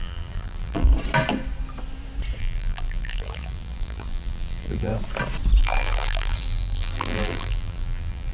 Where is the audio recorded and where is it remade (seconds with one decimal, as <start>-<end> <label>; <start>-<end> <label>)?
0.0-0.9 remade; 0.9-2.4 recorded; 2.4-4.9 remade; 4.9-5.6 recorded; 5.6-8.3 remade